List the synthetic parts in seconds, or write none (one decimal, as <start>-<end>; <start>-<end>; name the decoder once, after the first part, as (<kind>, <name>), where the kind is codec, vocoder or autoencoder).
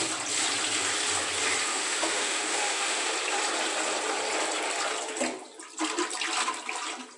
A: 1.7-3.1 (autoencoder, DAC-VAE)